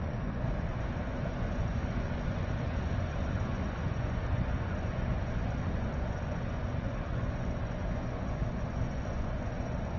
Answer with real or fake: fake